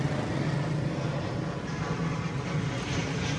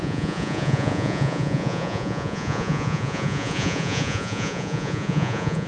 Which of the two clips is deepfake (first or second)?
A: second